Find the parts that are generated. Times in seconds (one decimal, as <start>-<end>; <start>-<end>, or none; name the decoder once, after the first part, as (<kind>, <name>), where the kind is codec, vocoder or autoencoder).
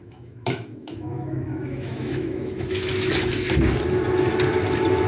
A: 0.0-3.1 (autoencoder, DAC-VAE)